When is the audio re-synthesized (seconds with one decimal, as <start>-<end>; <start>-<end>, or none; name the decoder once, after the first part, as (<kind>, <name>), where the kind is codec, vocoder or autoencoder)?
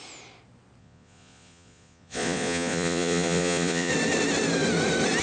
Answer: 0.8-3.9 (vocoder, Vocos)